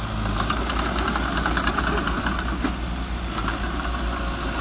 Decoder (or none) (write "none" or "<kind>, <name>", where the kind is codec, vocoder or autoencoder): none